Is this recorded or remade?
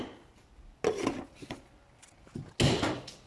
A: recorded